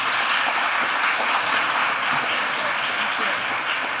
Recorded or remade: recorded